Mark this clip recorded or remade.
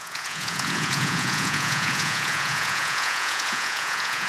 remade